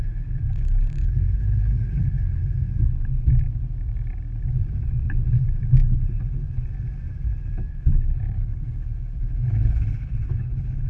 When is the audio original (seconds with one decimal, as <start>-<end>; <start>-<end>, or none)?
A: 2.4-7.7